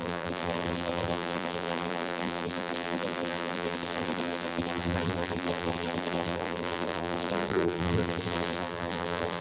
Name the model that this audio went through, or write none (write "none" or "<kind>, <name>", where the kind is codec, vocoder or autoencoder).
vocoder, BigVGAN v2